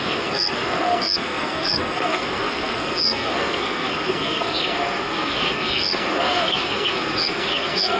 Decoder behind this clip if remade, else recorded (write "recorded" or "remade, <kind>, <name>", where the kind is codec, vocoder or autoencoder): remade, codec, SNAC